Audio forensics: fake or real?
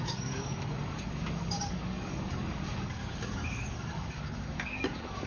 fake